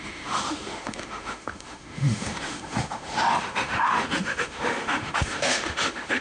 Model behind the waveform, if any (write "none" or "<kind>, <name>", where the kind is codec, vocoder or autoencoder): autoencoder, DAC-VAE